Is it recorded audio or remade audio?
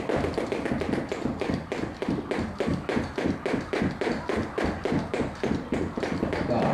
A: recorded